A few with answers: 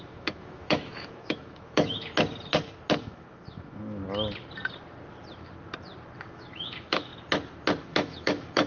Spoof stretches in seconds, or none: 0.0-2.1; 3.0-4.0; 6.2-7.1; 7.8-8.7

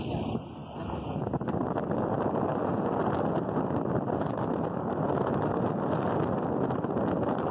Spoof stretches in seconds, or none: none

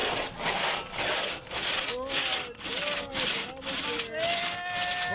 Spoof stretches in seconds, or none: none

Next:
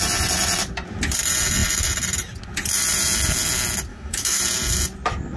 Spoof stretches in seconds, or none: 3.9-4.4

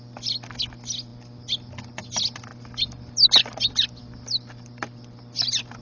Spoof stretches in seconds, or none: none